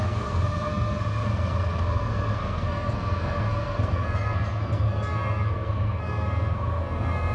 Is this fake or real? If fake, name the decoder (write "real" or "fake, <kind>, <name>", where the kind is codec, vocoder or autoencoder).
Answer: fake, codec, SNAC